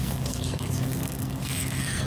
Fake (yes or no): yes